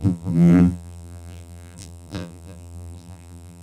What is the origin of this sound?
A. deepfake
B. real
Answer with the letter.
A